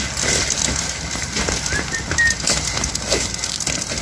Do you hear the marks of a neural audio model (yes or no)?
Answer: no